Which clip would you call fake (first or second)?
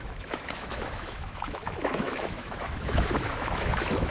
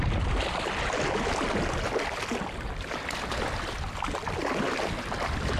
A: first